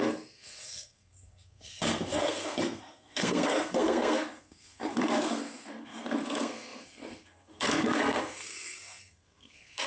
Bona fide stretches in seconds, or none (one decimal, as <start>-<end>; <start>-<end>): none